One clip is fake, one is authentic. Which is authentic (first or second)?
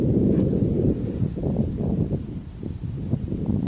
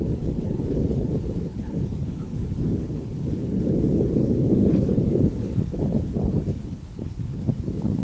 first